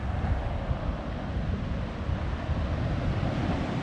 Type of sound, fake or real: real